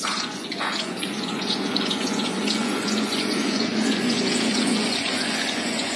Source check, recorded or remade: remade